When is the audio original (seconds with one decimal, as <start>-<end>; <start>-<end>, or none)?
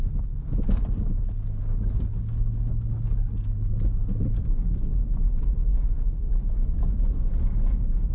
0.0-5.7; 7.1-8.1